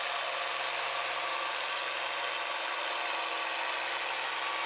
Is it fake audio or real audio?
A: real